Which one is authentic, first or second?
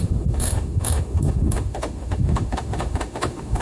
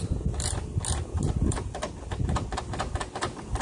second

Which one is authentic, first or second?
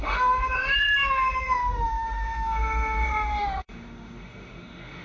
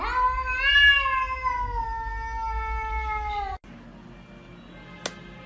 second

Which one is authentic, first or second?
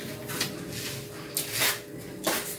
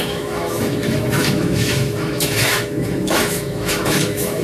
first